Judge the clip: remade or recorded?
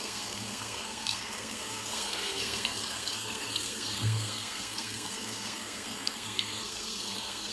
remade